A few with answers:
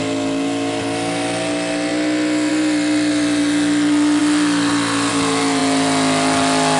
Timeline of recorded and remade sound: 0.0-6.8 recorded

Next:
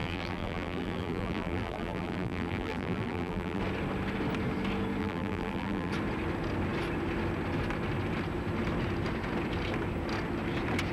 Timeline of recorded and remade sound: 0.0-3.6 remade; 3.6-5.0 recorded; 5.0-5.9 remade; 5.9-10.9 recorded

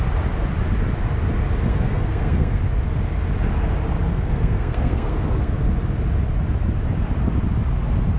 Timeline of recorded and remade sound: 0.0-1.7 recorded; 1.7-2.6 remade; 2.6-4.1 recorded; 4.1-5.7 remade; 5.7-8.2 recorded

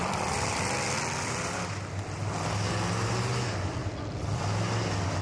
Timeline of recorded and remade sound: 0.0-2.2 remade; 2.2-5.2 recorded

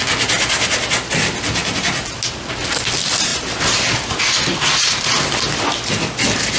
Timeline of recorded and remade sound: 0.0-3.3 recorded; 3.3-4.2 remade; 4.2-6.6 recorded